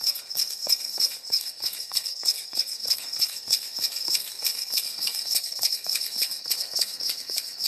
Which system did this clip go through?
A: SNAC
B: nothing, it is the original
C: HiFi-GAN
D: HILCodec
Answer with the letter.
A